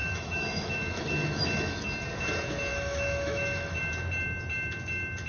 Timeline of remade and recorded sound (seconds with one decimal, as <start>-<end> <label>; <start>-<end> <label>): 0.0-1.9 remade; 1.9-2.7 recorded; 2.7-3.8 remade; 3.8-5.3 recorded